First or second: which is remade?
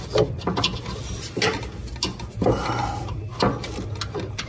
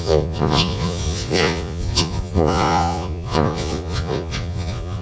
second